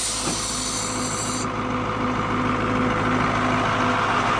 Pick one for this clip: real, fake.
real